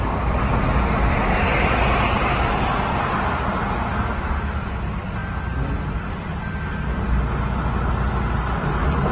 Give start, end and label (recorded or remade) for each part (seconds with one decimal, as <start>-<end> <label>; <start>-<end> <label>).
0.0-9.1 recorded